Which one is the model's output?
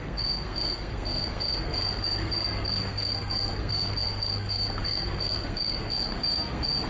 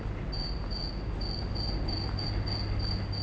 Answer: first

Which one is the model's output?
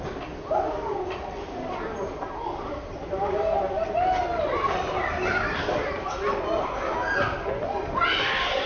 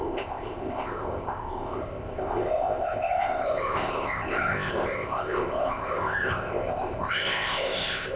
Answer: second